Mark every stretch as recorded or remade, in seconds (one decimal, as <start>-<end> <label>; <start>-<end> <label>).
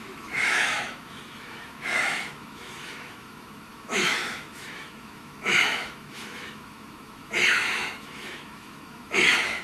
0.0-9.6 remade